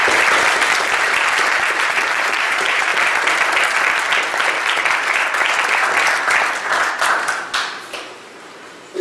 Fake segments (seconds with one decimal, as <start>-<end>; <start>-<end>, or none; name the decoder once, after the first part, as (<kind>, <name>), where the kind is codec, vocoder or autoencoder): 0.8-2.9 (vocoder, BigVGAN v2); 6.9-9.0